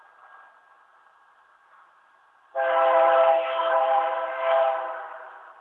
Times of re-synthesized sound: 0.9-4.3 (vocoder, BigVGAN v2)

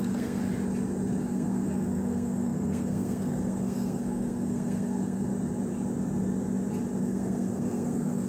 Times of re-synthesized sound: 0.0-0.4 (codec, SNAC); 1.2-5.3; 7.0-8.3

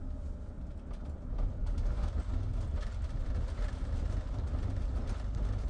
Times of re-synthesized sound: 1.6-2.1 (codec, DAC)

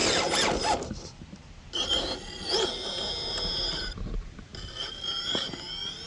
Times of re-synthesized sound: none